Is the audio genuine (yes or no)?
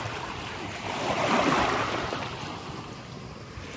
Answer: yes